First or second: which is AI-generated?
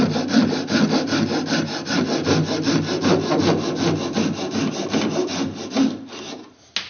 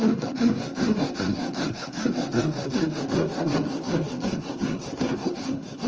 second